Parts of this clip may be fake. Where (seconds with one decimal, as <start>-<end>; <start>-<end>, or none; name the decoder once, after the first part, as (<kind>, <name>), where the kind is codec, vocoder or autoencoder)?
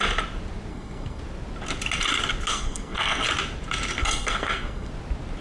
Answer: 0.7-1.2 (codec, SNAC); 2.5-3.2; 4.0-4.9